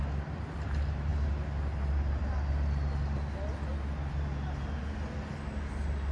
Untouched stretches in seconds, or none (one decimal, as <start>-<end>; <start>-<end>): 0.0-6.1